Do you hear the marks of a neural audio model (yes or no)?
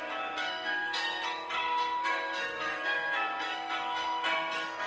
yes